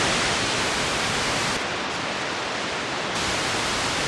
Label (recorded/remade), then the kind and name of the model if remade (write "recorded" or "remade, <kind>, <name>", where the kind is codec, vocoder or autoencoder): recorded